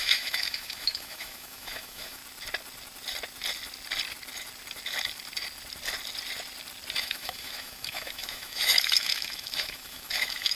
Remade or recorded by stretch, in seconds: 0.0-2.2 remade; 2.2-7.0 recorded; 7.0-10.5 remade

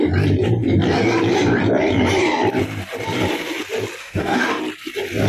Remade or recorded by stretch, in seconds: 0.0-4.0 recorded; 4.0-4.6 remade; 4.6-5.3 recorded

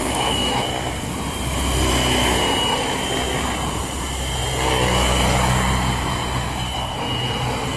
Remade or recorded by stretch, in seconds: 0.0-0.6 remade; 0.6-7.8 recorded

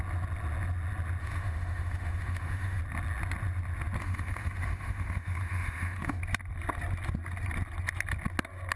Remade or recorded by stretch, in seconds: 0.0-1.2 recorded; 1.2-2.8 remade; 2.8-4.0 recorded; 4.0-6.2 remade; 6.2-8.8 recorded

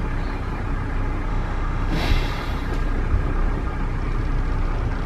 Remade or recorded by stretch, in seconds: 0.0-1.3 recorded; 1.3-2.1 remade; 2.1-5.1 recorded

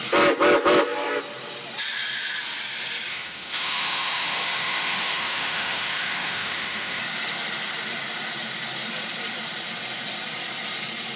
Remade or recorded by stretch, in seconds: 0.0-3.1 recorded; 3.1-7.0 remade; 7.0-11.2 recorded

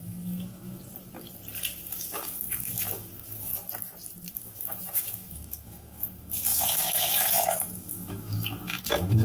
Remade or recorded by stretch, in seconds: 0.0-0.8 remade; 0.8-1.8 recorded; 1.8-3.5 remade; 3.5-4.3 recorded; 4.3-9.2 remade

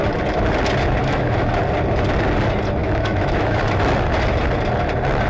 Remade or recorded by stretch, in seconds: 0.0-1.0 recorded; 1.0-1.6 remade; 1.6-2.8 recorded; 2.8-3.6 remade; 3.6-5.3 recorded